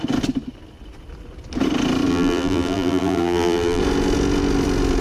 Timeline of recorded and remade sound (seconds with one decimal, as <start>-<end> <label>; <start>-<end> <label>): 0.0-2.1 recorded; 2.1-3.8 remade; 3.8-5.0 recorded